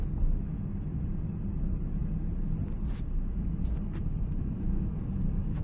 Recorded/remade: recorded